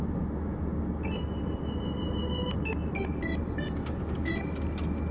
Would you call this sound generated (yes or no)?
no